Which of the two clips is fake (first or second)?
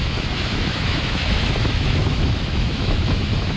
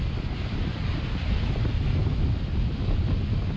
first